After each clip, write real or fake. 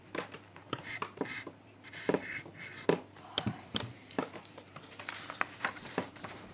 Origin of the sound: fake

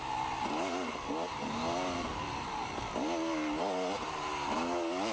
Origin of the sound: real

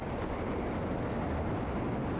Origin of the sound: real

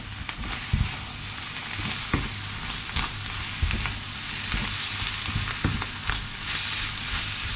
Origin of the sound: real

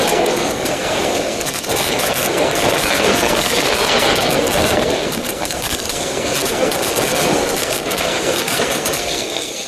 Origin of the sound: fake